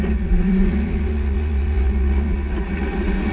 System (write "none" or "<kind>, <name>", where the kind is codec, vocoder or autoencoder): vocoder, Vocos